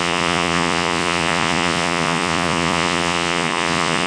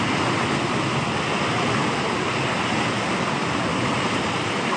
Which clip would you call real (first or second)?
second